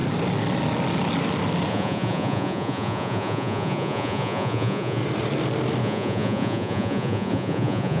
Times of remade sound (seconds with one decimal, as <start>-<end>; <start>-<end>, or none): 1.7-5.0; 5.8-8.0